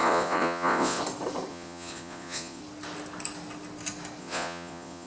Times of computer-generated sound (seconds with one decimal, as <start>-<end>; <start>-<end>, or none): 0.0-1.0; 1.5-2.6; 4.2-5.1